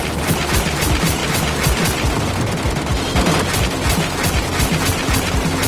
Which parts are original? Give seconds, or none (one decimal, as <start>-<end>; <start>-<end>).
0.0-5.7

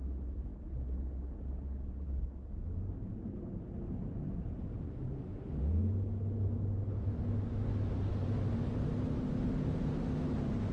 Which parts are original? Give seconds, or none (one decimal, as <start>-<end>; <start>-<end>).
0.0-3.1; 3.7-8.2; 9.5-10.7

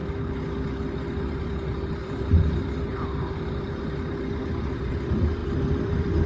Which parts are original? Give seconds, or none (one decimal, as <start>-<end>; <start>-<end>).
0.0-1.3

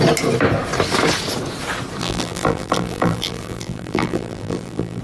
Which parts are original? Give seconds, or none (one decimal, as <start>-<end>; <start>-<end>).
0.0-2.0

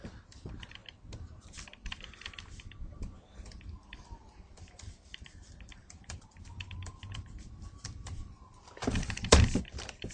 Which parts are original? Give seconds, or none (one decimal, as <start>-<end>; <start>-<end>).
0.8-1.4